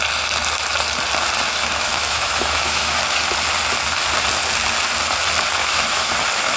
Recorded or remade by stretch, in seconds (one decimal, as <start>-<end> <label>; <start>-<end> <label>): 0.0-1.6 recorded; 1.6-3.0 remade; 3.0-5.6 recorded; 5.6-6.1 remade; 6.1-6.6 recorded